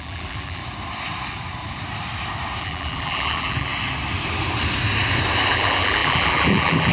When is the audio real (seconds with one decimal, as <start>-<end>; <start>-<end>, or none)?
0.6-2.6; 3.7-5.5